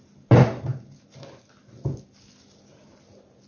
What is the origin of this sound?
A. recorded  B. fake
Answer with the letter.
A